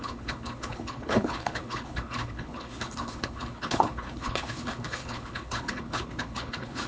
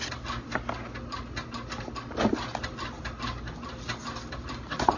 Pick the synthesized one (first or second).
first